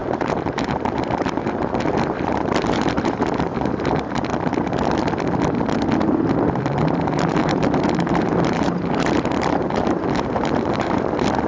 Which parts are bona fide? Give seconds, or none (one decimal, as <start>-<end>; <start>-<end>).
4.3-6.5